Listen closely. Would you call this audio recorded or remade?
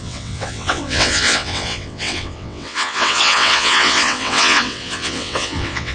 remade